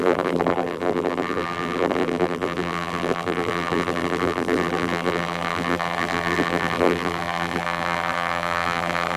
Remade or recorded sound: remade